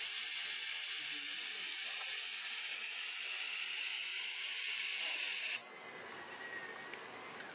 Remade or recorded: recorded